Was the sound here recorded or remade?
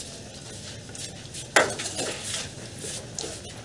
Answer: recorded